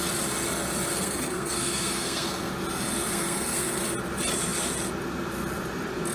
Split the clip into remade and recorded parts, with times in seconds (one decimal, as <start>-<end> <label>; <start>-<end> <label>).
0.0-0.9 recorded; 0.9-2.5 remade; 2.5-3.1 recorded; 3.1-3.8 remade; 3.8-6.1 recorded